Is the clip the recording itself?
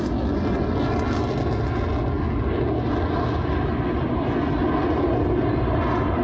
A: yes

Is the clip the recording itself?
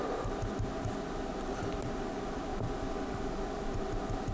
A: yes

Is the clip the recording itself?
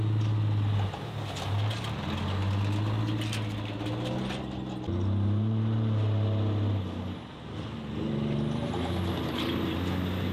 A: yes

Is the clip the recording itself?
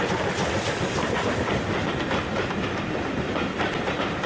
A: yes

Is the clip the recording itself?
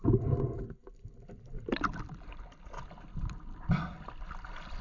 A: yes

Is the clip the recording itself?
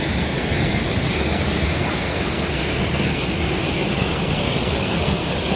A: no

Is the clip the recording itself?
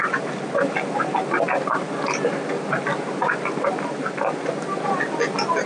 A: yes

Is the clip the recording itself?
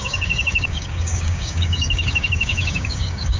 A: no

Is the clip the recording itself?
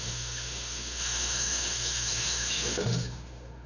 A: no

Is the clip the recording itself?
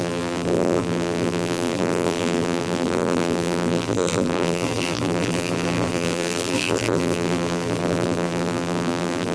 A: no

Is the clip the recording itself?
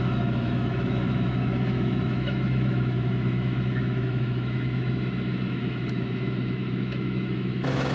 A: no